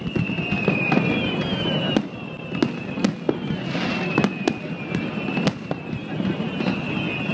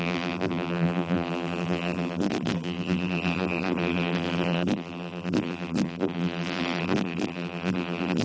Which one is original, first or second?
first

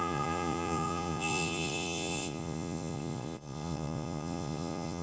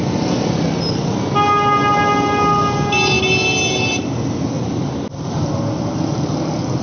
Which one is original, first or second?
second